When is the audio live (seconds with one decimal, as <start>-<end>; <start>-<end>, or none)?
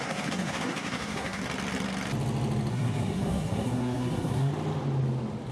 1.4-2.7; 4.5-5.5